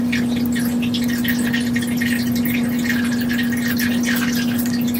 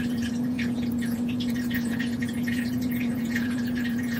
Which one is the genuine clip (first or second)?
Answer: first